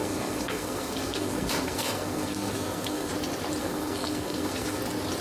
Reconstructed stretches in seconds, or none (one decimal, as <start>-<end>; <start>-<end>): 0.0-3.1; 3.6-4.8

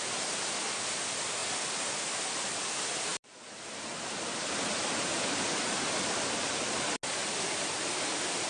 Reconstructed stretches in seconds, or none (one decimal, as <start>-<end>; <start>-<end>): none

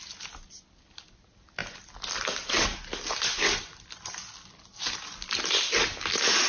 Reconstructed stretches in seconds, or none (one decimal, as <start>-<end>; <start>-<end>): none

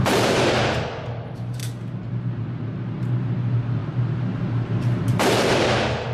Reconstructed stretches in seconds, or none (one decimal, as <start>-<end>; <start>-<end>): none